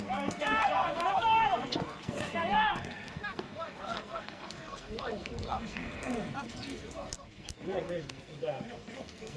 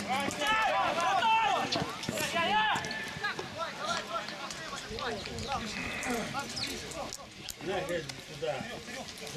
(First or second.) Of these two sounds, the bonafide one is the second